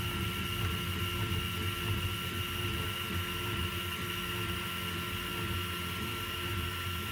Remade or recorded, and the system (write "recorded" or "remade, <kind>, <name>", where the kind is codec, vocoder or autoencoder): recorded